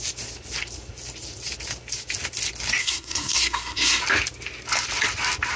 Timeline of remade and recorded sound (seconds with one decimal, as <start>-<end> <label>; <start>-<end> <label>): 0.0-2.8 recorded; 2.8-4.0 remade; 4.0-5.6 recorded